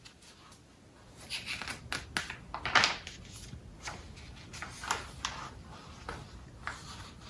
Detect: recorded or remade recorded